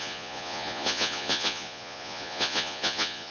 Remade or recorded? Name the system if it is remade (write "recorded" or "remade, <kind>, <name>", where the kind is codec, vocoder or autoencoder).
remade, vocoder, Vocos